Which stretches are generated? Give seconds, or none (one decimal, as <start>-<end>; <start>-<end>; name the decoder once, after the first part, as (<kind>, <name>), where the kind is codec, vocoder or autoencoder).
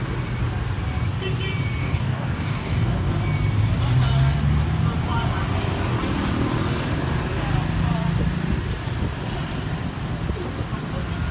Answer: 1.8-3.1 (codec, DAC)